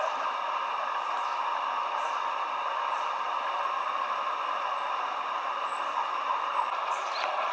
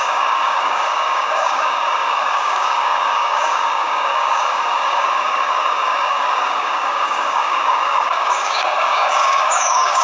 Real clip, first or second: first